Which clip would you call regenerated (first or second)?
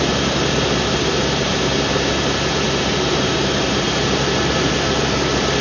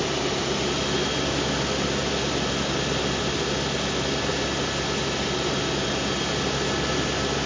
first